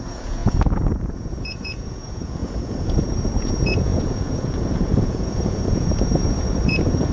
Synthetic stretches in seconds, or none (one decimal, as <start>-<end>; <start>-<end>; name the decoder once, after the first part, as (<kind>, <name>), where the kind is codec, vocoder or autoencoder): 0.0-7.1 (vocoder, Vocos)